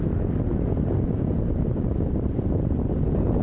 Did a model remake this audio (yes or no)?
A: no